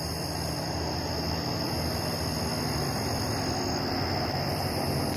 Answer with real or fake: real